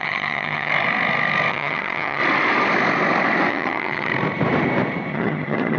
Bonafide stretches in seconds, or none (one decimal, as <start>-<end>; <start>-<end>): 0.7-1.5; 2.2-3.5; 4.1-5.1